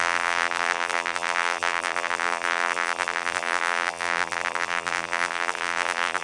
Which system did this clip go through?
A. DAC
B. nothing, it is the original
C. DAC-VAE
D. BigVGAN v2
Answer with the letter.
D